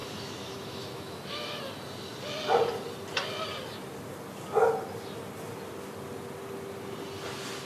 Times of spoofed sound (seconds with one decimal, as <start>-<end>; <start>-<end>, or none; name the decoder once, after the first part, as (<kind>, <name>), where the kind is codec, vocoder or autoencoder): 0.0-1.6 (autoencoder, DAC-VAE)